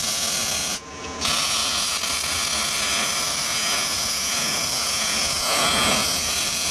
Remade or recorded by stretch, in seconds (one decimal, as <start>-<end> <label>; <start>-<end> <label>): 0.0-0.6 recorded; 0.6-1.2 remade; 1.2-3.5 recorded; 3.5-6.7 remade